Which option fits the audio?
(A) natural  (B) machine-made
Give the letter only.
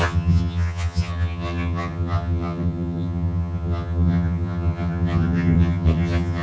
B